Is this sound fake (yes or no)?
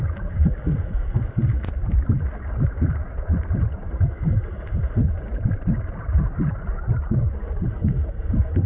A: no